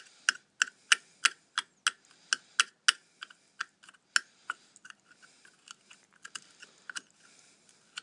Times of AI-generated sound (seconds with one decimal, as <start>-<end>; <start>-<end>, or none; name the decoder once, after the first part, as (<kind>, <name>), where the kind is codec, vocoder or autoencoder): none